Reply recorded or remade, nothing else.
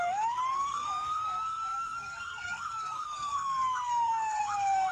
remade